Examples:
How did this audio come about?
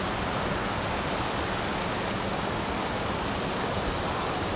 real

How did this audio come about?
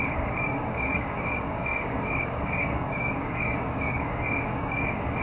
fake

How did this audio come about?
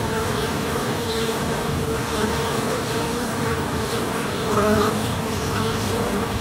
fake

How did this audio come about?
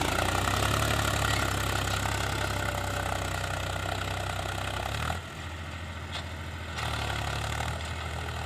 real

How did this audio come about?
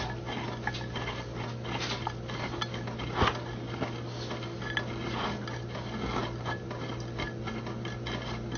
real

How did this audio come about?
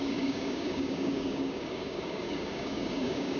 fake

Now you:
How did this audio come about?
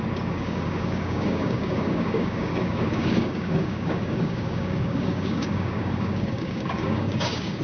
fake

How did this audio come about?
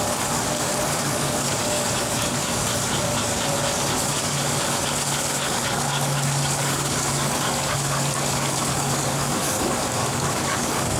fake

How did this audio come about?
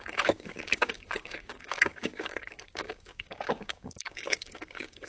fake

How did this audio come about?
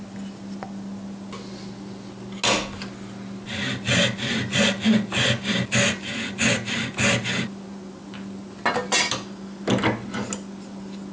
real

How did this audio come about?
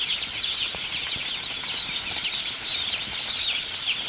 real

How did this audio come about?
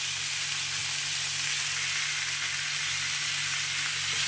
real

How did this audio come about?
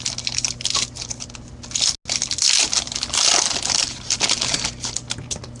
real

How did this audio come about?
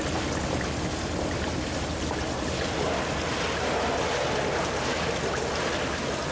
real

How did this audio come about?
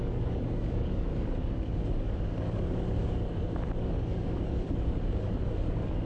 fake